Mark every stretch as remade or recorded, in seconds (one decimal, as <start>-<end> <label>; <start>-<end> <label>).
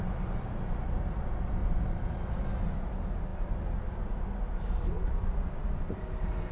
0.0-1.6 recorded; 1.6-2.4 remade; 2.4-6.5 recorded